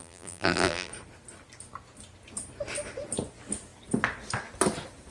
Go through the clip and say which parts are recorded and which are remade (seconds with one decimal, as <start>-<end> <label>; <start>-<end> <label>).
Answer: 0.0-0.9 remade; 0.9-5.1 recorded

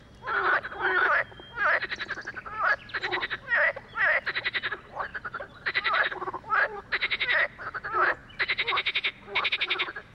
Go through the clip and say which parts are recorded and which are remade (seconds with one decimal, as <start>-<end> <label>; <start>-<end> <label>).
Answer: 0.0-5.1 recorded; 5.1-6.8 remade; 6.8-10.1 recorded

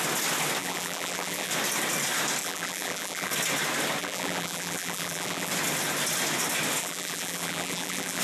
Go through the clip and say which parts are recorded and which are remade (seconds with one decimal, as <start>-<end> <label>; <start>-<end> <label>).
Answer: 0.0-0.6 recorded; 0.6-1.5 remade; 1.5-2.4 recorded; 2.4-3.3 remade; 3.3-4.0 recorded; 4.0-5.5 remade; 5.5-6.8 recorded; 6.8-8.2 remade

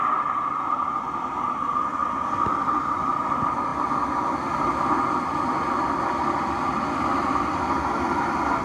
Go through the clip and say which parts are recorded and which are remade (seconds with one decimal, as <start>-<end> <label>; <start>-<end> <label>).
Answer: 0.0-8.6 recorded

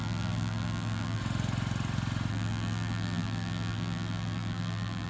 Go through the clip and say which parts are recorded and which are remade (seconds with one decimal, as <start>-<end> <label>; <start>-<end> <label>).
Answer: 0.0-1.2 remade; 1.2-2.3 recorded; 2.3-5.1 remade

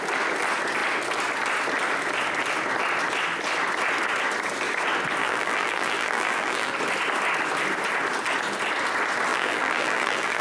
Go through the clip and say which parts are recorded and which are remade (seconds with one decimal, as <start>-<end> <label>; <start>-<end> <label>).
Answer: 0.0-5.2 recorded; 5.2-6.7 remade; 6.7-9.3 recorded; 9.3-10.4 remade

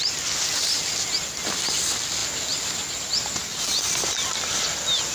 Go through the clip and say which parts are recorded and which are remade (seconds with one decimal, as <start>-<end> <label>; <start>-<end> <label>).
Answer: 0.0-5.1 recorded

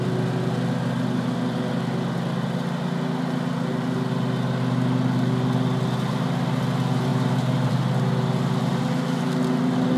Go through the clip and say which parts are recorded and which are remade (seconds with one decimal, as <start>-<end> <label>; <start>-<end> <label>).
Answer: 0.0-7.1 recorded; 7.1-7.7 remade; 7.7-10.0 recorded